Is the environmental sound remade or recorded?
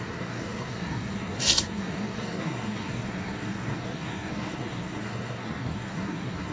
remade